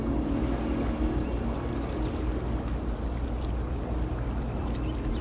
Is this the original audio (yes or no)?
yes